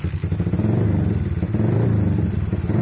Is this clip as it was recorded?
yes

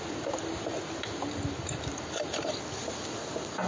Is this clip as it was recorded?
no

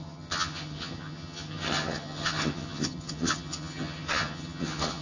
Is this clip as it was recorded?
no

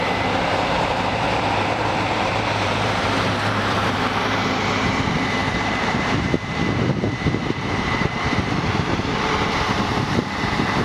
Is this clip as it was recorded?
no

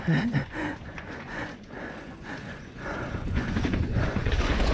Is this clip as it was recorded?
no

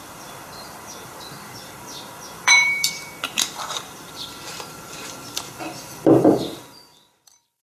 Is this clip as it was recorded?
no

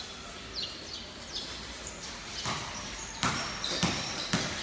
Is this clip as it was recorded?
yes